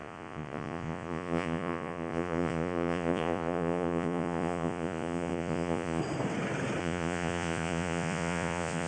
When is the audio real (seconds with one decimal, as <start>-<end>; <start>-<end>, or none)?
6.0-6.8